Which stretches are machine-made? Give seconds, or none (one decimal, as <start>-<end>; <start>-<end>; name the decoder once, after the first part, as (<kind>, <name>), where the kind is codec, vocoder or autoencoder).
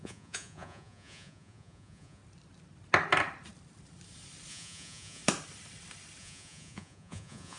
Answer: 0.0-2.2 (vocoder, Vocos); 4.5-5.2; 6.2-7.6